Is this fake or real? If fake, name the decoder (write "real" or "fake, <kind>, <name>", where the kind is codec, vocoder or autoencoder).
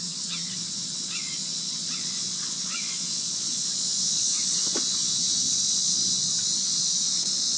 fake, vocoder, Vocos